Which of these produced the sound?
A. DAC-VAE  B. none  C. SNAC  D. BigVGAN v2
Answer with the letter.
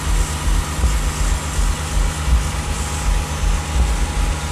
B